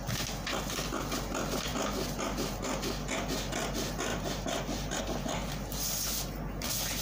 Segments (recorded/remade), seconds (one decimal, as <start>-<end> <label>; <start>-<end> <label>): 0.0-4.1 recorded; 4.1-5.0 remade; 5.0-7.0 recorded